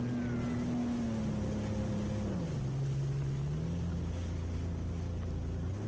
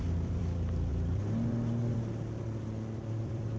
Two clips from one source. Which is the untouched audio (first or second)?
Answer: first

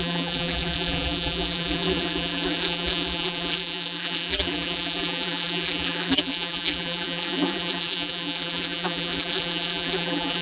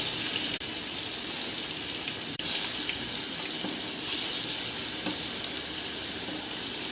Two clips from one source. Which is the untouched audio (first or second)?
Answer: second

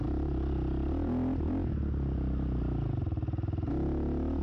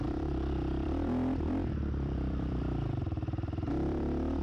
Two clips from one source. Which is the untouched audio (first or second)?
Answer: first